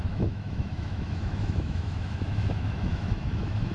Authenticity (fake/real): fake